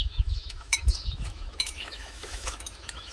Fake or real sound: fake